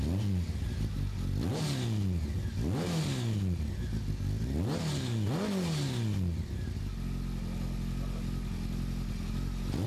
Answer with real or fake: real